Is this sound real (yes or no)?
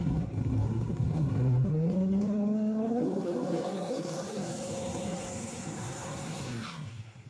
no